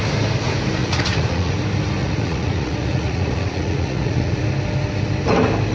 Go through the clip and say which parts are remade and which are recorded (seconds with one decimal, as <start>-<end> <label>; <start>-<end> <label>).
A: 0.0-0.8 recorded; 0.8-1.5 remade; 1.5-2.0 recorded; 2.0-4.4 remade; 4.4-5.7 recorded